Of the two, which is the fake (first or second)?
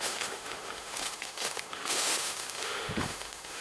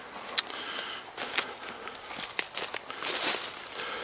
first